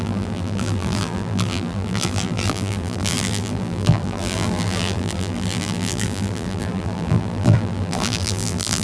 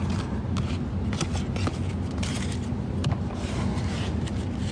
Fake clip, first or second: first